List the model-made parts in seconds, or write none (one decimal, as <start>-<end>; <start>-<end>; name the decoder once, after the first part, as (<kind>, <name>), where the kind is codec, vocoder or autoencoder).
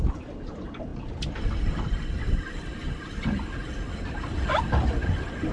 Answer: none